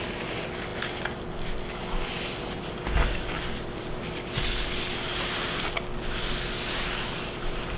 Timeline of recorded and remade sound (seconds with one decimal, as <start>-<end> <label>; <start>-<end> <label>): 0.0-7.8 recorded